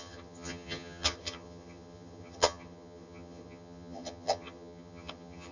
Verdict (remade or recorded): remade